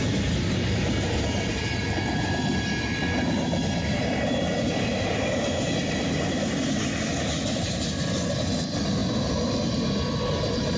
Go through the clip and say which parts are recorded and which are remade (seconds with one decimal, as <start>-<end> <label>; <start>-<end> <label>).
0.0-10.8 recorded